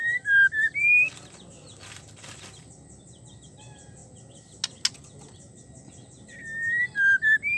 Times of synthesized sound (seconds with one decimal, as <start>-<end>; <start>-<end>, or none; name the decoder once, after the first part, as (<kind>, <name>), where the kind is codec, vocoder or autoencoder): none